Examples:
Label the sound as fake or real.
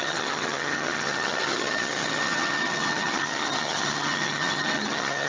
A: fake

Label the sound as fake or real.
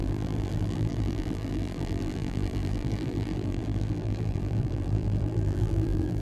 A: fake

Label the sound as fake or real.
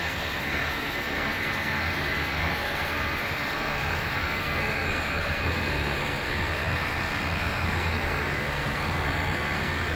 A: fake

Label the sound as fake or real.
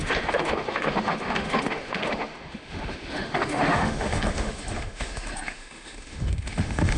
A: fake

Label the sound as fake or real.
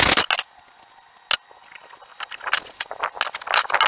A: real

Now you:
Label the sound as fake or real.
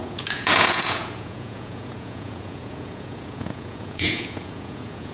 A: fake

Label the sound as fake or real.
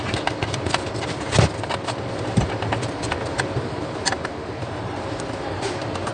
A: fake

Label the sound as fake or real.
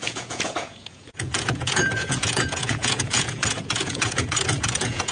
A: fake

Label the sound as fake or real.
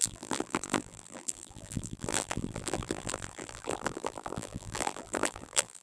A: fake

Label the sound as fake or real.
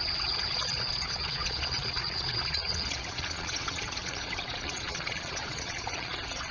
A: fake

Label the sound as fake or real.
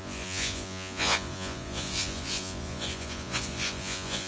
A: fake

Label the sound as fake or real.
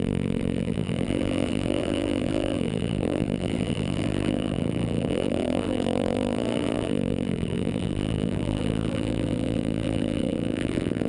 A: fake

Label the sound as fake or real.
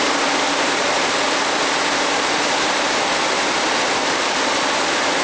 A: real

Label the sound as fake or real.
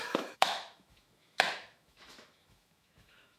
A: fake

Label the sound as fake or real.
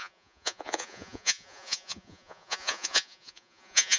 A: fake